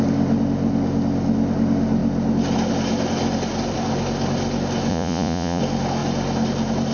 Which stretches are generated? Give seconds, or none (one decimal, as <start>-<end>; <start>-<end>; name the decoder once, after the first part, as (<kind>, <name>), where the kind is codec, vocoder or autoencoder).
4.9-5.6 (vocoder, Vocos)